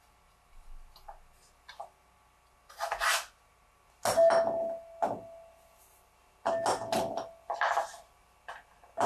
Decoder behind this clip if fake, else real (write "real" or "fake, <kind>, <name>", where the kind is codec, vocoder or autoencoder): real